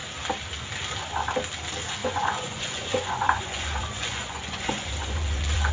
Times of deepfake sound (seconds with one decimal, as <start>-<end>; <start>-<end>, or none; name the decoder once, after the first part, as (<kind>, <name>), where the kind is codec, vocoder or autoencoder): 2.0-5.7 (vocoder, Vocos)